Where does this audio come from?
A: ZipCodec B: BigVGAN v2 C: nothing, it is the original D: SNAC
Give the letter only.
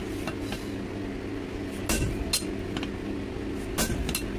C